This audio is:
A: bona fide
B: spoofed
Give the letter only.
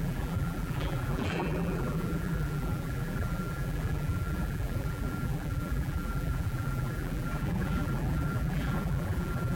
B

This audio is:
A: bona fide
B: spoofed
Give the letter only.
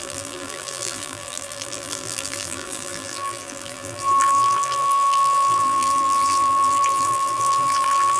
B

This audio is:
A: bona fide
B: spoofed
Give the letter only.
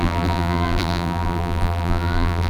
B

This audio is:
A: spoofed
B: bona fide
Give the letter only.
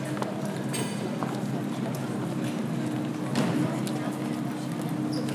B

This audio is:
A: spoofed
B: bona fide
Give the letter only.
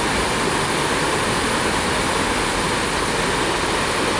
B